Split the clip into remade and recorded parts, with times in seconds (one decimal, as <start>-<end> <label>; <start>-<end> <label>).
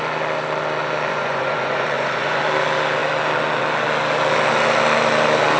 0.0-1.1 recorded; 1.1-2.4 remade; 2.4-5.6 recorded